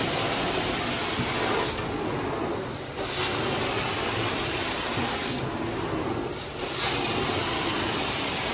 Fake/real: real